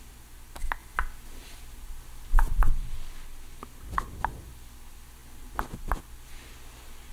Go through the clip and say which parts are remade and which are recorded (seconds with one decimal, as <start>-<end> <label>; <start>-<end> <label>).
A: 0.0-7.1 recorded